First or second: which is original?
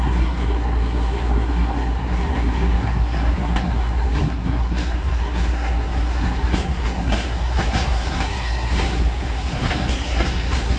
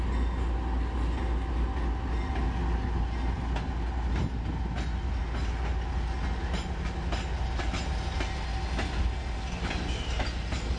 second